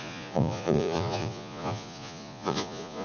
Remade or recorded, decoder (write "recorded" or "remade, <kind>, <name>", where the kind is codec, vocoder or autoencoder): remade, vocoder, Vocos